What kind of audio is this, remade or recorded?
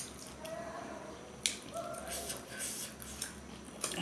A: recorded